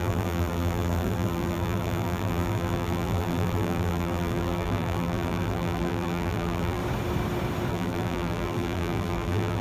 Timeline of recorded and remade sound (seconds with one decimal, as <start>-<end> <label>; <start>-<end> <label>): 0.0-6.8 remade; 6.8-7.7 recorded; 7.7-9.6 remade

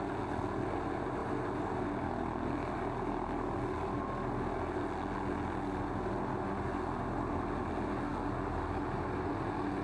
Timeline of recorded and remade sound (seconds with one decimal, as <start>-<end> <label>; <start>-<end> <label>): 0.0-9.8 recorded

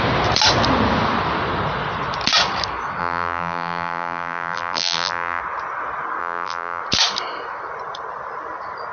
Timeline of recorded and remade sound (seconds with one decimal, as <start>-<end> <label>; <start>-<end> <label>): 0.0-3.0 recorded; 3.0-5.4 remade; 5.4-6.2 recorded; 6.2-6.8 remade; 6.8-8.9 recorded